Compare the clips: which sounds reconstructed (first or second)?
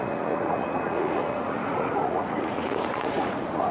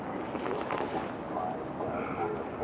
first